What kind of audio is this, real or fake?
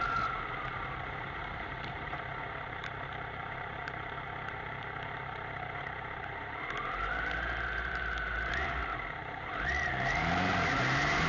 fake